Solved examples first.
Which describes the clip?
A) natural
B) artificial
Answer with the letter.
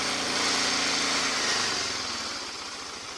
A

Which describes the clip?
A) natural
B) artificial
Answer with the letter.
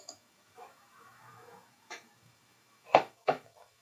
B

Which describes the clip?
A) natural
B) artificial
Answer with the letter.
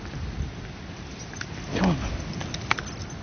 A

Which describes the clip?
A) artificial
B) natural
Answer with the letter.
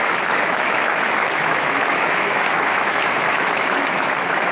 A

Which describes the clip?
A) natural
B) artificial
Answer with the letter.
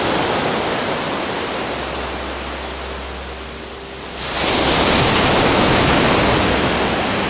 A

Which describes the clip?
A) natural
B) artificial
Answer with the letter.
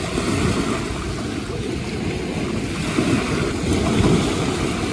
A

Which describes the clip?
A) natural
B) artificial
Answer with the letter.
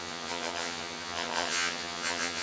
B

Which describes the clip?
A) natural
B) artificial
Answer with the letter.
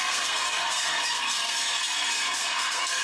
B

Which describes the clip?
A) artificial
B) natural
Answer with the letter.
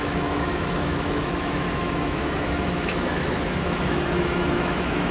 A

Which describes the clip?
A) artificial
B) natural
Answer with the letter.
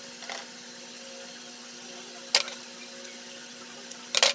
B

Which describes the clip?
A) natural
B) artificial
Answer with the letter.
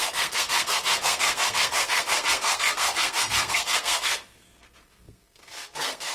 B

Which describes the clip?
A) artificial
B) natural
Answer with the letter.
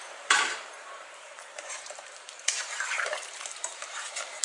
A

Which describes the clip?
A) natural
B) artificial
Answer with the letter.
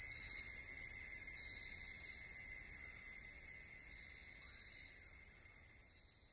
A